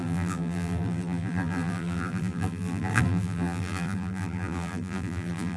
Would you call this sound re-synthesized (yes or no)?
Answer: yes